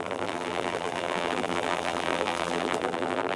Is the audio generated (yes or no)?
yes